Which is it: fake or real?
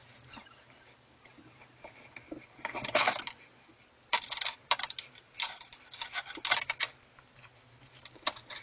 real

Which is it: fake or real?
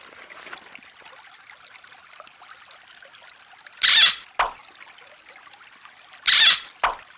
real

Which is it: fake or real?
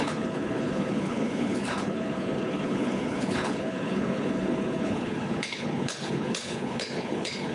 fake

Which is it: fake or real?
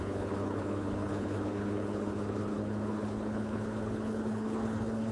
fake